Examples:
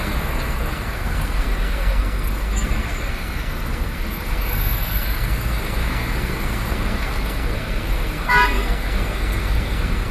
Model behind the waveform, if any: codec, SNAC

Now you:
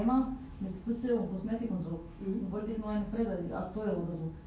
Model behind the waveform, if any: autoencoder, DAC-VAE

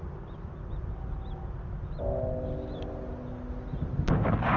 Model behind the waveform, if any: none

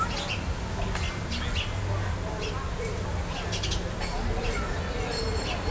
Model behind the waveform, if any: none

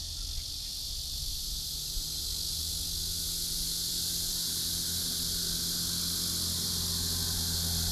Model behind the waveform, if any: none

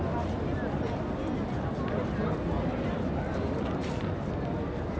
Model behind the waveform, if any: none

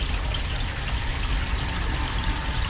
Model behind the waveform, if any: none